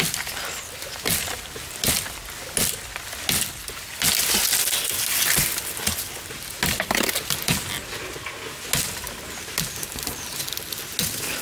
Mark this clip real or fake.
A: real